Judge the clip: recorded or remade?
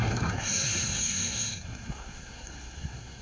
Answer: remade